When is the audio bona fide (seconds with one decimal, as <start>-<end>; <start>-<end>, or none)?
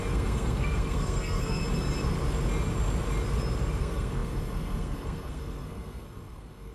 1.6-3.8